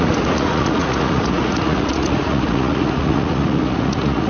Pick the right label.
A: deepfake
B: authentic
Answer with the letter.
A